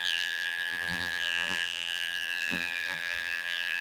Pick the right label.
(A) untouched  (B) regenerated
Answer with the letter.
B